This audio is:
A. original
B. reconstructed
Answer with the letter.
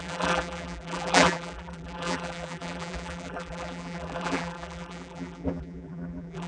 B